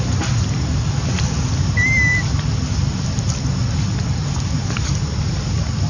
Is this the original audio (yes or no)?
yes